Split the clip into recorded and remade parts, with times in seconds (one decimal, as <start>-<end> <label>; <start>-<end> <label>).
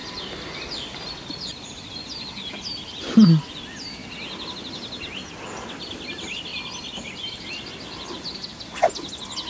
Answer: 0.0-0.6 remade; 0.6-9.5 recorded